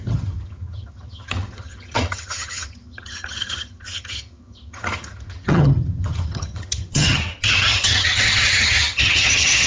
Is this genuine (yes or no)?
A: no